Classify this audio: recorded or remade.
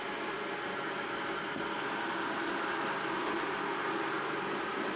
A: recorded